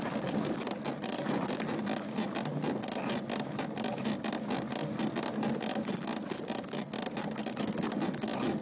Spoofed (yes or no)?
no